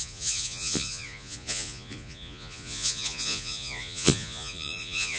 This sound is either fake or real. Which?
fake